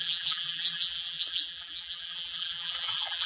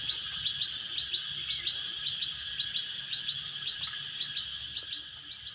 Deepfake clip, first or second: first